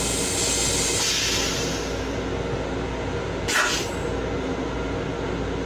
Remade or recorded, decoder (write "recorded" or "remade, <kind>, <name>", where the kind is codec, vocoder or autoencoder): recorded